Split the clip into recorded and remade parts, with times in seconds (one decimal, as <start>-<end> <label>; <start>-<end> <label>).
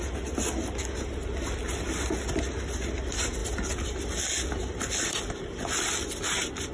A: 0.0-6.7 recorded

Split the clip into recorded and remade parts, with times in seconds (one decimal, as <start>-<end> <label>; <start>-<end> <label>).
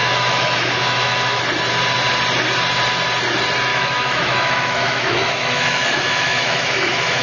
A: 0.0-1.4 remade; 1.4-3.7 recorded; 3.7-7.2 remade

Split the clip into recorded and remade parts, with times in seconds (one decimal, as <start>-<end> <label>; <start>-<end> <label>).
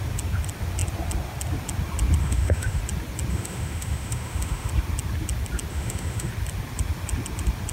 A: 0.0-2.2 recorded; 2.2-2.8 remade; 2.8-3.3 recorded; 3.3-4.7 remade; 4.7-5.7 recorded; 5.7-6.3 remade; 6.3-7.7 recorded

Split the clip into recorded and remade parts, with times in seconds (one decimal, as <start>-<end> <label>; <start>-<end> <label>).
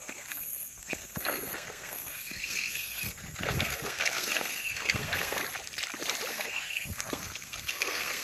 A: 0.0-5.4 remade; 5.4-6.3 recorded; 6.3-8.2 remade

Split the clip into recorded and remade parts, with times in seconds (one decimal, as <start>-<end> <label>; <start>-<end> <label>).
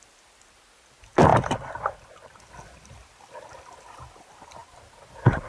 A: 0.0-5.5 recorded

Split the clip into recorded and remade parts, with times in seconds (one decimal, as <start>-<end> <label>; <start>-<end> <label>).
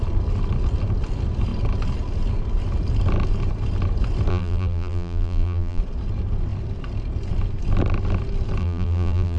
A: 0.0-4.3 recorded; 4.3-5.8 remade; 5.8-8.6 recorded; 8.6-9.4 remade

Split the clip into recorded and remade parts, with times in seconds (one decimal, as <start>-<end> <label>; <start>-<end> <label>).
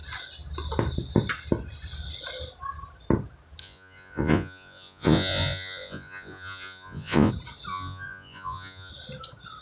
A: 0.0-3.6 recorded; 3.6-7.3 remade; 7.3-7.7 recorded; 7.7-8.9 remade; 8.9-9.6 recorded